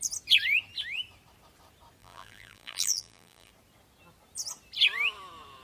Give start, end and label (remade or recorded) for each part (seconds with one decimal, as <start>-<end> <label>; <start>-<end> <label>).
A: 0.0-2.0 recorded; 2.0-3.5 remade; 3.5-5.6 recorded